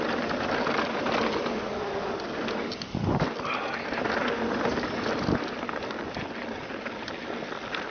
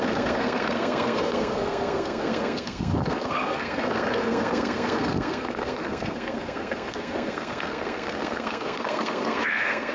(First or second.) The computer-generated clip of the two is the second